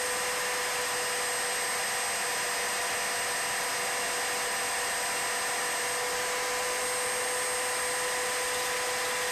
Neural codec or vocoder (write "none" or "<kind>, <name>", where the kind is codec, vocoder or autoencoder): none